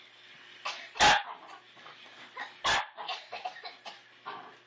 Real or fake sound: real